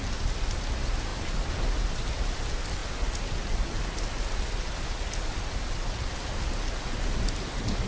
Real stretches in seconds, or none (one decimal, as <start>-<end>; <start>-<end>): 0.0-7.9